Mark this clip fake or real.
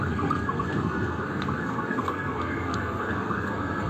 fake